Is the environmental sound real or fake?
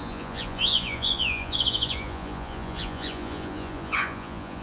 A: fake